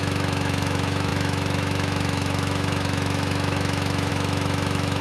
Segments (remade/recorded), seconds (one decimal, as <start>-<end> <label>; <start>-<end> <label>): 0.0-5.0 remade